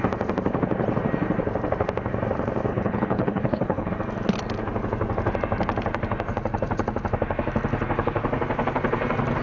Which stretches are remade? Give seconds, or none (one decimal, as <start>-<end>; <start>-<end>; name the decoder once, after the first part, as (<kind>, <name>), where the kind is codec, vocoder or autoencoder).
2.7-3.9 (codec, HILCodec)